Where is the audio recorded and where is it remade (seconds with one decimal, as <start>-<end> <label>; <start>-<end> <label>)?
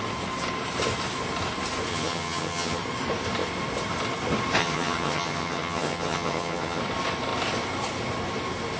0.0-1.9 recorded; 1.9-2.8 remade; 2.8-4.6 recorded; 4.6-6.8 remade; 6.8-8.8 recorded